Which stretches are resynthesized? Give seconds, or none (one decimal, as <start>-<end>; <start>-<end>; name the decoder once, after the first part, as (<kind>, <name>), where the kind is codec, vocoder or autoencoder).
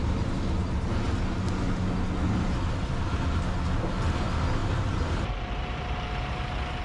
0.6-1.2 (vocoder, BigVGAN v2); 4.6-6.8